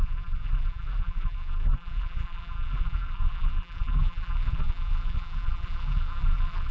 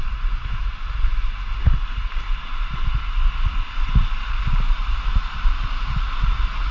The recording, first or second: second